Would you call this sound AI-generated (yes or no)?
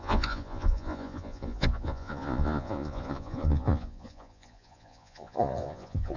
yes